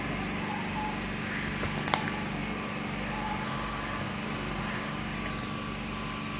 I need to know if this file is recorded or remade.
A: remade